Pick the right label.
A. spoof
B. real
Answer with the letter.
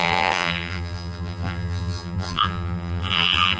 A